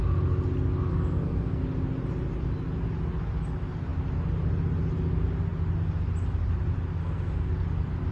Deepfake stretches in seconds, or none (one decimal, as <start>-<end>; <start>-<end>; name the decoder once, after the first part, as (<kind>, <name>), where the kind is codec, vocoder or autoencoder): 0.9-1.6 (codec, SNAC); 7.0-7.5